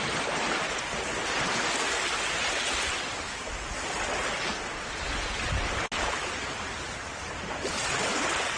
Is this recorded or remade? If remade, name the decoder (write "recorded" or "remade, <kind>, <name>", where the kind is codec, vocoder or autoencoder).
recorded